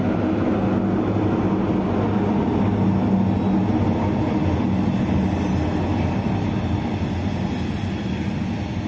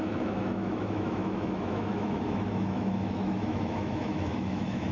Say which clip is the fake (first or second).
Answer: second